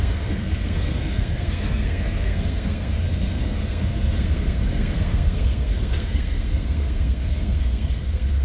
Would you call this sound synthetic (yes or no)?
yes